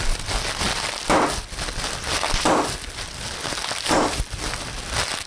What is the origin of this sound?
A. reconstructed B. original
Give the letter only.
B